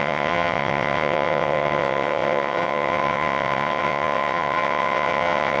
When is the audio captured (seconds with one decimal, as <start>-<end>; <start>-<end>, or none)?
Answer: none